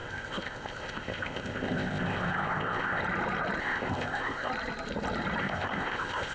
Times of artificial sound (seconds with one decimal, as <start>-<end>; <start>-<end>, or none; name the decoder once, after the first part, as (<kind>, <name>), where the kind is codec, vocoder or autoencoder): 0.0-3.0 (codec, ZipCodec); 3.6-4.5; 5.4-6.3